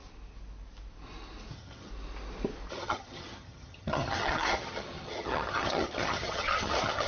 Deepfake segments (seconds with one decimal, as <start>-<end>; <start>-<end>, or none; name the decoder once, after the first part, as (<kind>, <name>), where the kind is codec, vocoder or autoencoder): 1.5-1.9 (vocoder, HiFi-GAN); 2.7-7.1